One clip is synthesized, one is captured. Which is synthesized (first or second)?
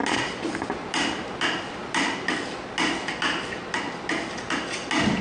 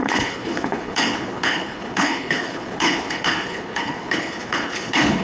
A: second